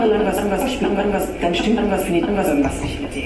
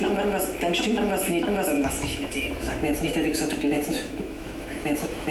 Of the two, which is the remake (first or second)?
second